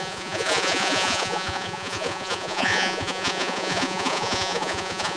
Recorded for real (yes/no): no